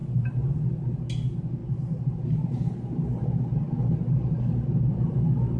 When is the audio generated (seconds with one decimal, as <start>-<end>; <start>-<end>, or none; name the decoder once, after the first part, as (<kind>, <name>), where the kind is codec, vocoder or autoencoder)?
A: 0.0-0.7 (vocoder, BigVGAN v2)